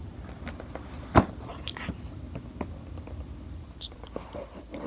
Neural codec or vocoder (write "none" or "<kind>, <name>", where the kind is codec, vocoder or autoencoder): vocoder, BigVGAN v2